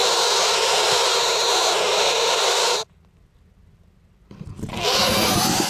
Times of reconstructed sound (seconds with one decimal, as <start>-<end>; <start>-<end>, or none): 4.7-5.3